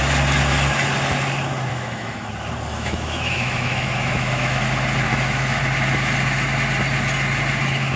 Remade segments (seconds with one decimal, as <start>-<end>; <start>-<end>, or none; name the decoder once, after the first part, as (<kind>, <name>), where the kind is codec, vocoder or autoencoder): 1.7-2.3 (autoencoder, DAC-VAE); 2.7-4.6; 5.1-5.6